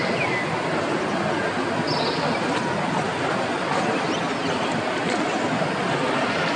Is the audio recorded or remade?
recorded